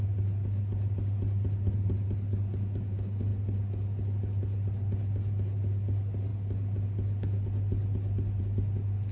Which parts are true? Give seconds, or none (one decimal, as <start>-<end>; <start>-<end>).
0.0-9.1